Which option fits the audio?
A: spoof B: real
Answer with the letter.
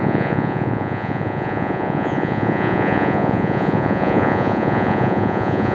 A